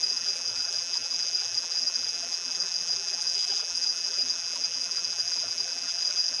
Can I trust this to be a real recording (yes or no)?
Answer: no